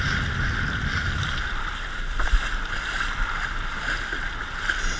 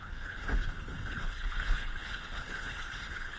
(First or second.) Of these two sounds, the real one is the first